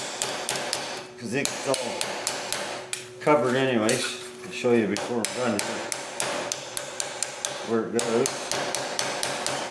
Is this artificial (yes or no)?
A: no